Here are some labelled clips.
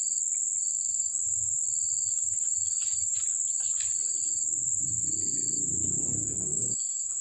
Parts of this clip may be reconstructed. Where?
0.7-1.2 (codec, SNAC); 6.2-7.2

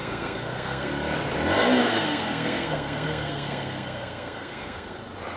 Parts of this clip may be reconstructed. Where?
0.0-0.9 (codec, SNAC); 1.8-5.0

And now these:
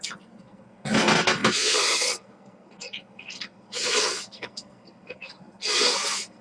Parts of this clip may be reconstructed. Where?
0.0-6.4 (codec, SNAC)

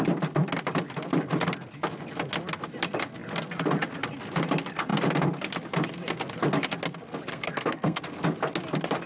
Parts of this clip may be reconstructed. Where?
7.3-8.0 (codec, SNAC)